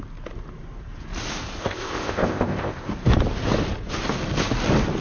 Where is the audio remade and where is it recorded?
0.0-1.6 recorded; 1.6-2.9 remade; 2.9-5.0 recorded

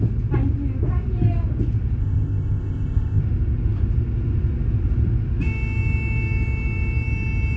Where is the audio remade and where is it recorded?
0.0-2.0 recorded; 2.0-3.2 remade; 3.2-7.6 recorded

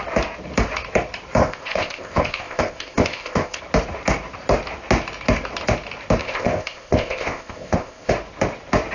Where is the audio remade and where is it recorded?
0.0-1.4 recorded; 1.4-3.6 remade; 3.6-6.2 recorded; 6.2-8.1 remade; 8.1-8.9 recorded

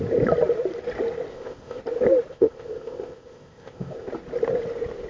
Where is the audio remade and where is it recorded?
0.0-1.3 recorded; 1.3-1.8 remade; 1.8-2.3 recorded; 2.3-4.1 remade; 4.1-5.1 recorded

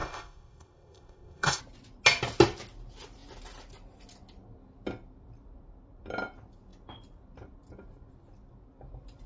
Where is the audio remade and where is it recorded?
0.0-1.6 remade; 1.6-9.3 recorded

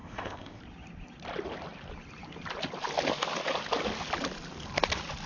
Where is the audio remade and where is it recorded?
0.0-0.6 remade; 0.6-5.3 recorded

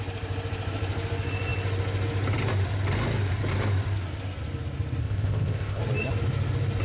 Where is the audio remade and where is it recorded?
0.0-5.0 recorded; 5.0-5.8 remade; 5.8-6.8 recorded

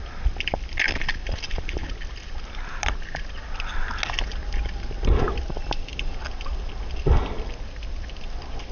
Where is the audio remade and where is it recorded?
0.0-8.7 recorded